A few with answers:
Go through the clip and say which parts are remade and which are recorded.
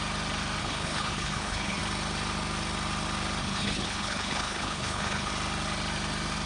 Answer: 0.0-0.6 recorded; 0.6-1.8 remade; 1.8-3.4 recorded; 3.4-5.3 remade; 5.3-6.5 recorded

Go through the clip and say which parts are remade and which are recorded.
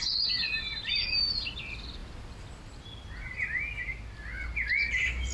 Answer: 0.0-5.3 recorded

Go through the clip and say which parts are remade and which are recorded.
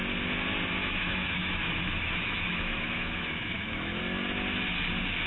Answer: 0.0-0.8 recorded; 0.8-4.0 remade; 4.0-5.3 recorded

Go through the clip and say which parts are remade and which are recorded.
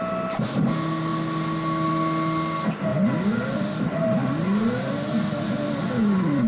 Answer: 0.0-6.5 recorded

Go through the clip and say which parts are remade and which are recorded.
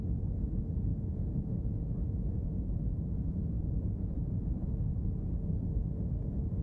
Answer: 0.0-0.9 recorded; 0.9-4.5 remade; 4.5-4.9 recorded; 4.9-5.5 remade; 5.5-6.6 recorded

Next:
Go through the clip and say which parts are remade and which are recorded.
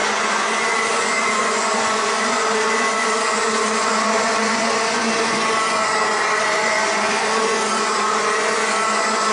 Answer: 0.0-9.3 remade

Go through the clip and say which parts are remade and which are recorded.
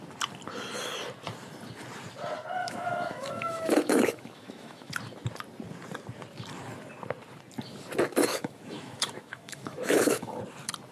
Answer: 0.0-2.6 recorded; 2.6-4.9 remade; 4.9-8.3 recorded; 8.3-10.4 remade; 10.4-10.9 recorded